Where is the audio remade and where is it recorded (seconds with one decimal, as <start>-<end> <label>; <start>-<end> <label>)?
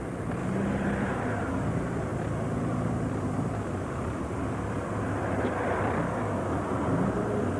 0.0-7.6 recorded